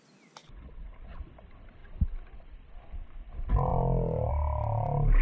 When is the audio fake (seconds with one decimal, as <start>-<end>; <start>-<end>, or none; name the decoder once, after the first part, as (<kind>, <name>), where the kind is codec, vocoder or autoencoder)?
0.4-1.2 (vocoder, Vocos)